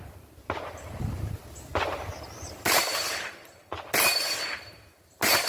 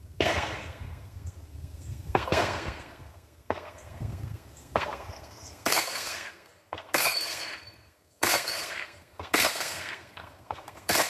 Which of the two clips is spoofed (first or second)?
second